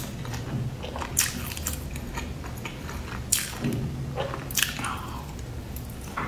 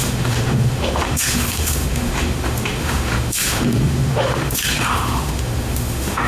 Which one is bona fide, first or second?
first